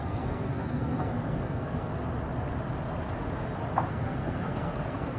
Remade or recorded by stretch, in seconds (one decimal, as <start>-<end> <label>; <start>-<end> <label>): 0.0-1.9 remade; 1.9-3.9 recorded; 3.9-5.2 remade